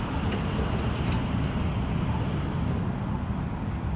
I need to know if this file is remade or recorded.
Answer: recorded